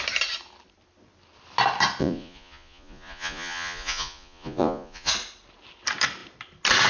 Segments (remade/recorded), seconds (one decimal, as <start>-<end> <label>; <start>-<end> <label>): 0.0-2.0 recorded; 2.0-5.1 remade; 5.1-6.9 recorded